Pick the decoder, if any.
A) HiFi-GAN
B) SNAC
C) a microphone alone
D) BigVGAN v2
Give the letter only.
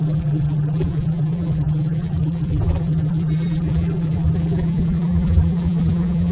D